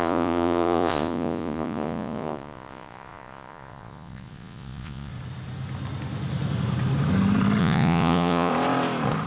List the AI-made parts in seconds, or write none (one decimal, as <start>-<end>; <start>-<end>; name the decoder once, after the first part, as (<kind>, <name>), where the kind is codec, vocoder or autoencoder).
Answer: 0.0-5.1 (vocoder, Vocos); 7.6-8.5